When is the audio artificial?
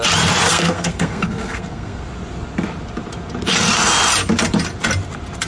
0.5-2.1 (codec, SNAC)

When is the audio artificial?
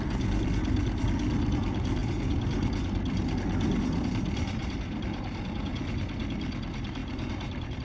2.0-2.5 (vocoder, BigVGAN v2); 4.6-5.4; 7.0-7.8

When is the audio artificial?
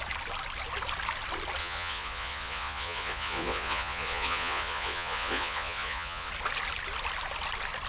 1.6-6.3 (vocoder, Vocos)